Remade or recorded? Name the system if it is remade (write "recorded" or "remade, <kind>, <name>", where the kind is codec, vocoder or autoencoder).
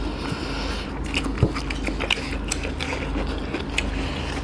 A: recorded